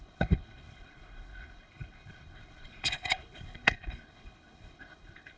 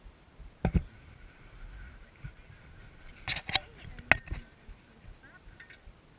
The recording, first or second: second